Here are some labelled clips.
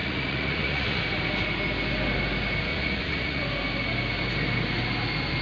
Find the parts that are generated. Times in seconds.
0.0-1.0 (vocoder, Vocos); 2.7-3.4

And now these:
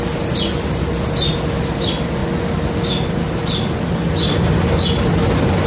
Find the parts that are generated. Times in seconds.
none